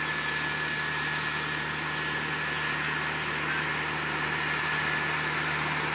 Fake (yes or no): no